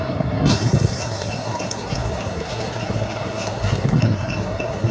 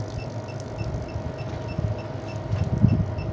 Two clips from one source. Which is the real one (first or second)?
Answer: second